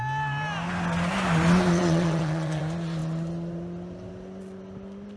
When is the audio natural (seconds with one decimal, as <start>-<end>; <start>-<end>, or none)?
0.0-1.8; 2.6-5.2